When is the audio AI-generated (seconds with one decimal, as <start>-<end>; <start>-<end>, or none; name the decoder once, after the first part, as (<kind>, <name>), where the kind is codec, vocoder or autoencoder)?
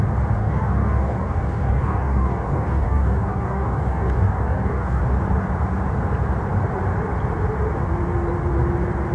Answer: 0.4-5.0 (codec, DAC)